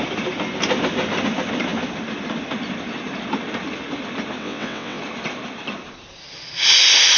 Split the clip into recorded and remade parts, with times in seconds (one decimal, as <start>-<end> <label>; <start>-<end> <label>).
0.0-4.4 recorded; 4.4-5.0 remade; 5.0-7.2 recorded